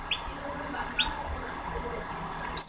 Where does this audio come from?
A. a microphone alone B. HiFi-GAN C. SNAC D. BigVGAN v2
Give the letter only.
A